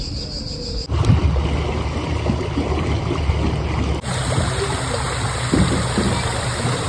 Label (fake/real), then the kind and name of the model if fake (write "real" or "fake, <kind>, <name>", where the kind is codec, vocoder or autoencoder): real